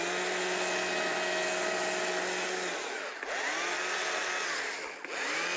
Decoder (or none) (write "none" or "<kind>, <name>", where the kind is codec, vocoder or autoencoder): none